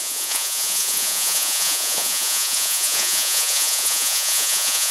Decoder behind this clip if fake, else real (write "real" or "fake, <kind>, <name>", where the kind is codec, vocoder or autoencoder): fake, vocoder, Vocos